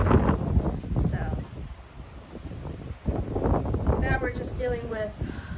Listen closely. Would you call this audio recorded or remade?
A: recorded